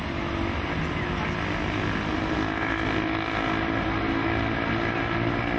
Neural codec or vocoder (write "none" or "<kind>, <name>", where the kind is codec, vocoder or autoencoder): none